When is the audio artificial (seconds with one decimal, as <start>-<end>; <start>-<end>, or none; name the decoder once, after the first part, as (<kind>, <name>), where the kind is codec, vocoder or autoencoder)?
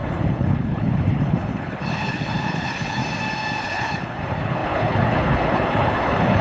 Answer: 0.0-3.0 (codec, HILCodec); 3.6-6.4